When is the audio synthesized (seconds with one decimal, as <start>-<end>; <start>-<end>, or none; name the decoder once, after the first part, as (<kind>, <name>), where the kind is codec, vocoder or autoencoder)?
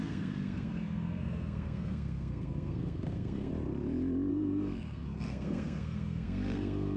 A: 0.0-3.5 (codec, SNAC); 4.3-7.0